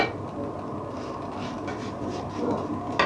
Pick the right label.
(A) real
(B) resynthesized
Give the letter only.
A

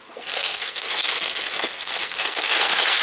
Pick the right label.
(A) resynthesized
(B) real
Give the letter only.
A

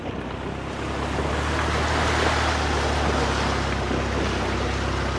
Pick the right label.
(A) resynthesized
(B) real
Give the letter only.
B